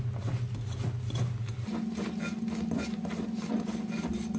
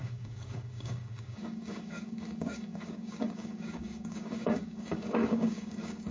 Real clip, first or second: first